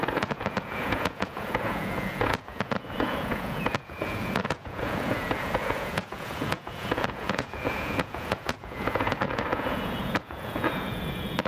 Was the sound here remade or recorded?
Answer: remade